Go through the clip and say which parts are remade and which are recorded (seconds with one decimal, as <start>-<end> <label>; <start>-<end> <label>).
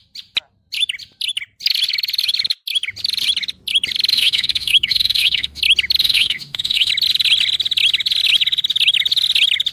0.0-4.1 recorded; 4.1-5.6 remade; 5.6-6.0 recorded; 6.0-6.9 remade; 6.9-9.7 recorded